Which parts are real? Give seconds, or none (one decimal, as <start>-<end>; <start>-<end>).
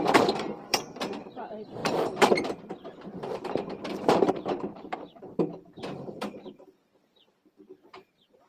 none